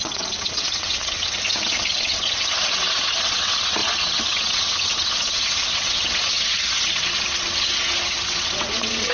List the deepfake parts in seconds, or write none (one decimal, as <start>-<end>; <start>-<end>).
0.0-9.1